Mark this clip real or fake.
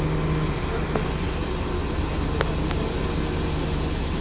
real